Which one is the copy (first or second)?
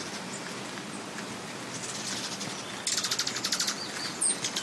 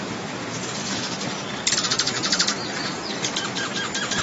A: second